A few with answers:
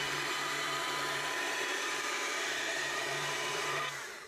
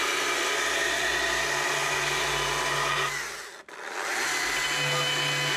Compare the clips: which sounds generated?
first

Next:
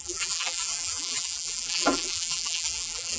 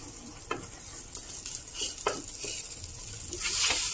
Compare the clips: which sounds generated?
first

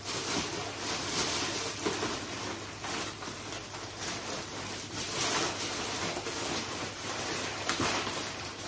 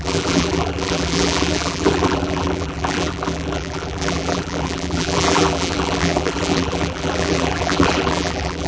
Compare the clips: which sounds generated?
second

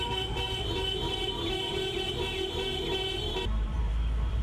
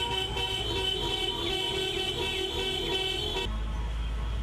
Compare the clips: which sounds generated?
first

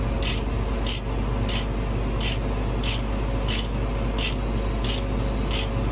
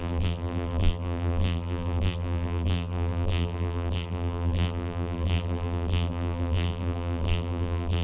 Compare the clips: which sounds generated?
second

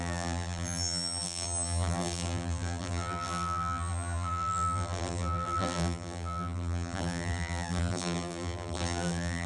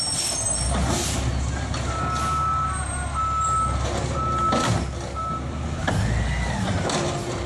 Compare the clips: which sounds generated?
first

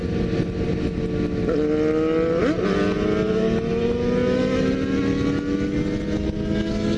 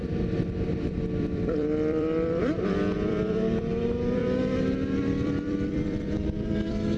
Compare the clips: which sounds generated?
second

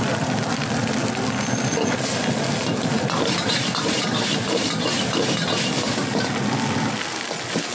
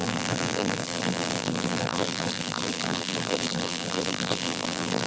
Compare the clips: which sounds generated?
second